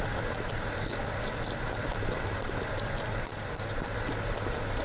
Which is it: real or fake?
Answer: real